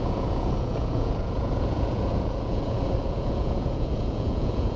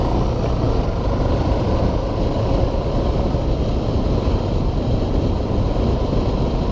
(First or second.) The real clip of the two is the second